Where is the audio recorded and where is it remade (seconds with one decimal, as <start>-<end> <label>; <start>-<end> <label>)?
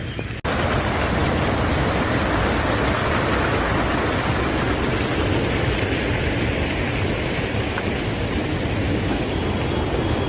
0.0-8.8 recorded; 8.8-9.4 remade; 9.4-10.3 recorded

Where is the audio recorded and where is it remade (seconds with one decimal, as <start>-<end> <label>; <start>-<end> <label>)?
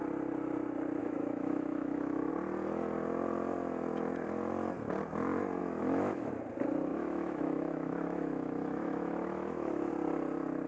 0.0-1.0 recorded; 1.0-2.3 remade; 2.3-5.6 recorded; 5.6-6.3 remade; 6.3-6.9 recorded; 6.9-9.9 remade; 9.9-10.7 recorded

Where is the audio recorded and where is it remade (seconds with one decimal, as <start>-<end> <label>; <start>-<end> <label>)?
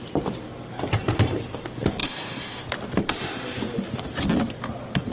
0.0-2.0 recorded; 2.0-2.6 remade; 2.6-5.1 recorded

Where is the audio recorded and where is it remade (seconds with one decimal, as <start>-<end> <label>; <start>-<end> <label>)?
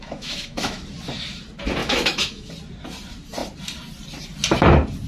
0.0-0.8 remade; 0.8-1.8 recorded; 1.8-2.5 remade; 2.5-5.1 recorded